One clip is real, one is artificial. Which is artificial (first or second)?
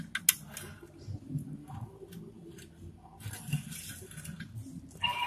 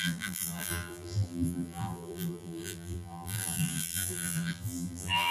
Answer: second